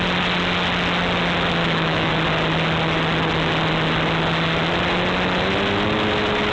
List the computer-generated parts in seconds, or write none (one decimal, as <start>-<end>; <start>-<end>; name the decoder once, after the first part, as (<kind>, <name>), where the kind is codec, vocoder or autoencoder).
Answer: 1.6-2.1 (autoencoder, DAC-VAE)